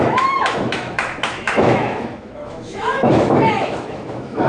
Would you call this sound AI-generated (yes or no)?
yes